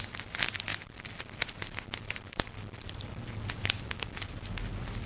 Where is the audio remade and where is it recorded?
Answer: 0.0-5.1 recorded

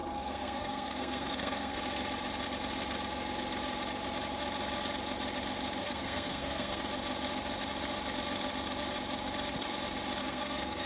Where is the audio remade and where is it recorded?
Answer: 0.0-1.8 remade; 1.8-5.8 recorded; 5.8-6.8 remade; 6.8-10.2 recorded; 10.2-10.9 remade